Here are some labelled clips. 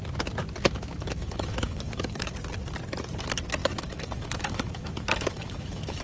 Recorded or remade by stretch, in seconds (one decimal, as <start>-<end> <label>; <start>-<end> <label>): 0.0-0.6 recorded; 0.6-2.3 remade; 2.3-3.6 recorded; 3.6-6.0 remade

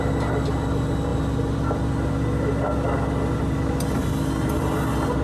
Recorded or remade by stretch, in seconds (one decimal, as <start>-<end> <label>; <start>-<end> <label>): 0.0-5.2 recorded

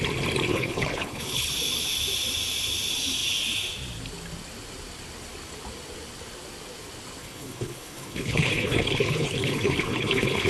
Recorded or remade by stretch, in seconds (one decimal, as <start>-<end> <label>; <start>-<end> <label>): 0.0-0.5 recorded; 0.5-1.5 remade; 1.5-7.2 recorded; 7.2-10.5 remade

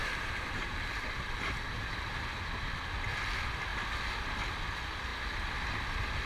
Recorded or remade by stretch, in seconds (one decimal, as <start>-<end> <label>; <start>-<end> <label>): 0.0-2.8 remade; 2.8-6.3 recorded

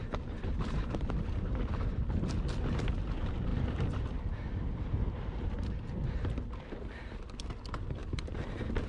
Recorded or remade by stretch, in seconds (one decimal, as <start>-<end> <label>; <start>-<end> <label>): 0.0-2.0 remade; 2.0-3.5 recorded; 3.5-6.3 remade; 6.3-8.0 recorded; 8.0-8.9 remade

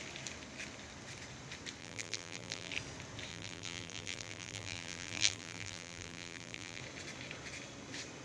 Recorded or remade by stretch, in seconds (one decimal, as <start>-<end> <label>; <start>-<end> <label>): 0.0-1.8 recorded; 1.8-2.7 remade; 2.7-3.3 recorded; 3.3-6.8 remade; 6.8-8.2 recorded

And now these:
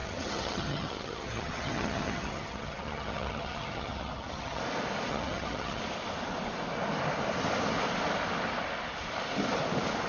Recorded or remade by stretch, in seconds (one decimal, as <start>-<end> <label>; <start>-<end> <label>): 0.0-4.6 remade; 4.6-5.1 recorded; 5.1-5.8 remade; 5.8-10.1 recorded